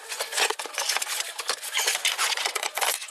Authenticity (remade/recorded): remade